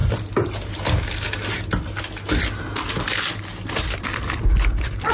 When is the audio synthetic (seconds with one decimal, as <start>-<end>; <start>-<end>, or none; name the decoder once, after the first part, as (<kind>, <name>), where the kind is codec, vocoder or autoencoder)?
none